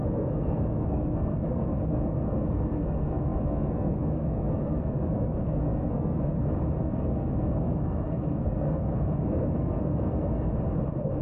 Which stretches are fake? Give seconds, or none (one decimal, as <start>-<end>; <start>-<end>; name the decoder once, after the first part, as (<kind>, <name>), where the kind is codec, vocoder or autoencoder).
0.0-6.3 (codec, SNAC); 6.8-10.5